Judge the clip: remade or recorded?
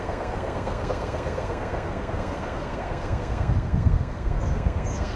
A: remade